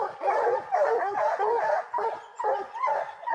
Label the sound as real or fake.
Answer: fake